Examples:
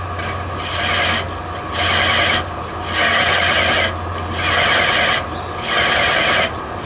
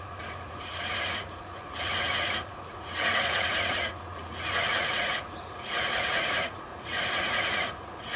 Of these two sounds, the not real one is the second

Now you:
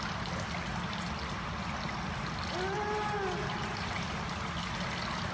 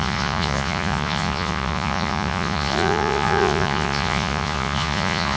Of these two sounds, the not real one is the second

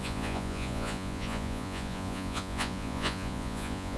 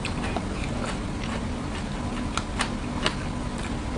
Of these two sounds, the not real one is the first